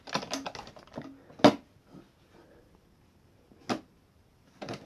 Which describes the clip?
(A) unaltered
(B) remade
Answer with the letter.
A